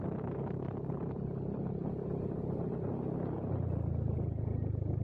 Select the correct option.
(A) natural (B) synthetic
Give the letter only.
A